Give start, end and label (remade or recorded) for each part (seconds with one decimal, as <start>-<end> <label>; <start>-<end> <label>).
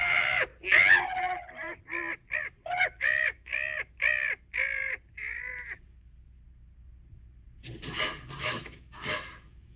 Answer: 0.0-0.5 remade; 0.5-2.8 recorded; 2.8-3.5 remade; 3.5-8.4 recorded; 8.4-9.8 remade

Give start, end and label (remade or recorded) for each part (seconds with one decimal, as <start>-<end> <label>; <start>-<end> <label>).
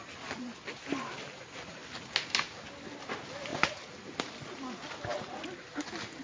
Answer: 0.0-6.2 recorded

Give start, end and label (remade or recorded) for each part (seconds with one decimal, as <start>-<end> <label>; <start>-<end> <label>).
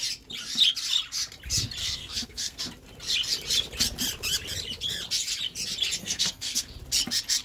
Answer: 0.0-1.8 recorded; 1.8-2.6 remade; 2.6-6.0 recorded; 6.0-6.7 remade; 6.7-7.4 recorded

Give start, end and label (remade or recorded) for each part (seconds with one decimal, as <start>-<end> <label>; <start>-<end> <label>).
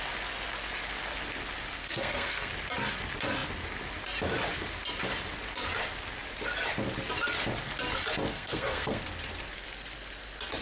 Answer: 0.0-1.8 recorded; 1.8-2.5 remade; 2.5-8.3 recorded; 8.3-9.0 remade; 9.0-10.6 recorded